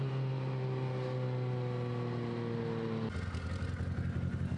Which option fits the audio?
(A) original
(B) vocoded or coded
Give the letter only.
A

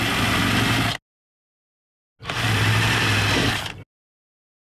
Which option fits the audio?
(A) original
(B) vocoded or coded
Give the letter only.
A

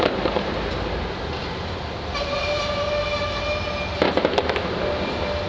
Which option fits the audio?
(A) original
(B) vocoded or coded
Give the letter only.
A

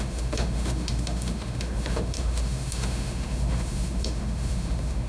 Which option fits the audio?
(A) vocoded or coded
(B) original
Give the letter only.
A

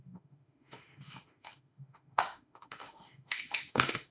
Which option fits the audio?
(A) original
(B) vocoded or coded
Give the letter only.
B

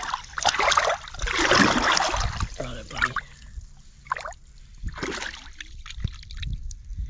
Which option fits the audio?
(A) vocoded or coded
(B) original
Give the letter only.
B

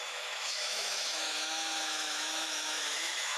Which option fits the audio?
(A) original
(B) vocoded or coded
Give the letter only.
B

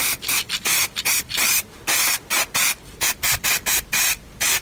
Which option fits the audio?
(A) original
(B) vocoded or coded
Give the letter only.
A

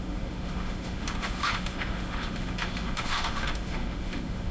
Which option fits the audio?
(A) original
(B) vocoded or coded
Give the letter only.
B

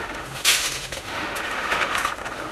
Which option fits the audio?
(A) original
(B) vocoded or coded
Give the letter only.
B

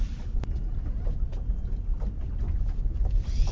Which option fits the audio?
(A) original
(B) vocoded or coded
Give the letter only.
A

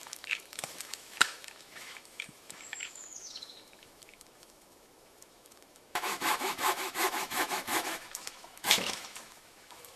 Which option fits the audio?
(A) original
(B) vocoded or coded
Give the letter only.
B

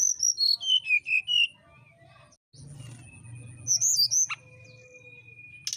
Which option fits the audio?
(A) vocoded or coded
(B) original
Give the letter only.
B